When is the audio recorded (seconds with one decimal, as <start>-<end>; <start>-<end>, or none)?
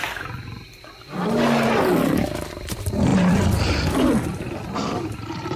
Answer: 0.0-5.6